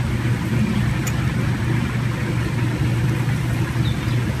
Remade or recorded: recorded